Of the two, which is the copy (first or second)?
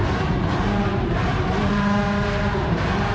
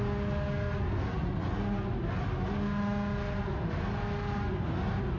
first